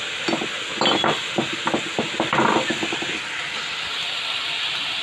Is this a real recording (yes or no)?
yes